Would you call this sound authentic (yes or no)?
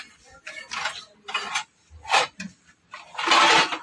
yes